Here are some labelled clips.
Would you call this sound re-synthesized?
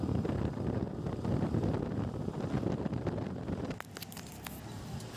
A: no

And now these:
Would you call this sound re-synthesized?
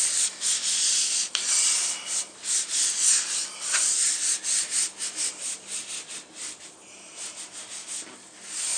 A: no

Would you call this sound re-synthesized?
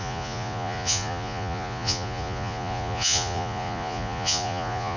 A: yes